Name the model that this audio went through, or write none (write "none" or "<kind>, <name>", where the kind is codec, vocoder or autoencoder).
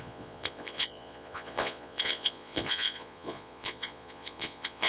vocoder, Vocos